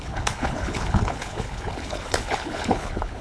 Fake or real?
fake